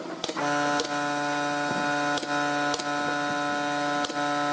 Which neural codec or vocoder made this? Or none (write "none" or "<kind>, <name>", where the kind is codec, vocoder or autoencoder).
none